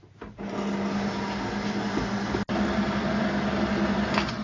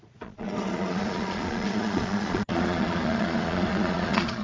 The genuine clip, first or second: first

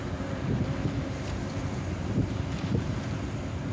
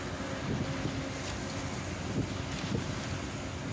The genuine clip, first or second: second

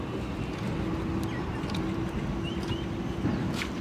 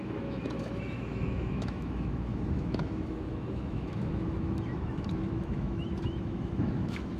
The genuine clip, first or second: first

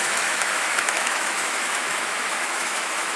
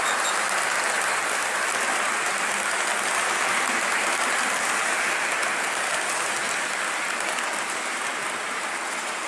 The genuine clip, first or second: second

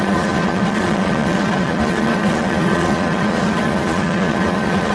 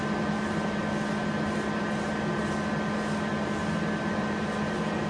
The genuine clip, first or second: second